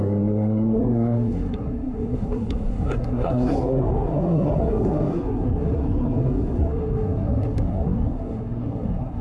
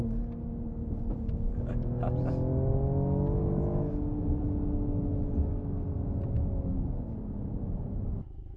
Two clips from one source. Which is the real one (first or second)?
second